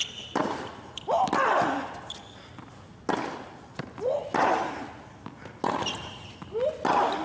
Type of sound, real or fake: real